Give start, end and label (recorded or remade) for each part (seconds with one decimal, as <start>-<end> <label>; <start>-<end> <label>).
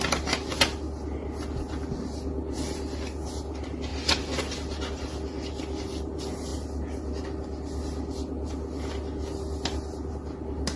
0.0-10.8 recorded